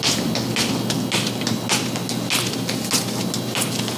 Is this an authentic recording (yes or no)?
yes